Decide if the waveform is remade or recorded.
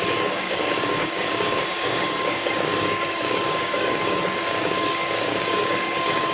remade